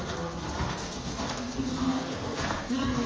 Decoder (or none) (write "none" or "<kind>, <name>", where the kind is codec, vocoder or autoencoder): codec, SNAC